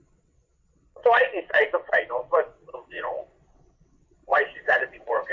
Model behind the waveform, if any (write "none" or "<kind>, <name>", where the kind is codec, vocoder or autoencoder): vocoder, WaveNeXt